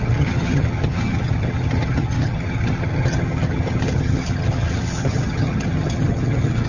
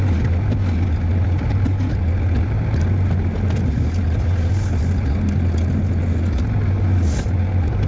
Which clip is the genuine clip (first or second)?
second